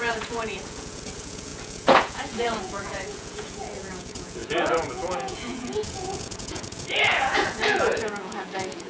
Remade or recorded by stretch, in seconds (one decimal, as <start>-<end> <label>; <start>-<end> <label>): 0.0-8.9 remade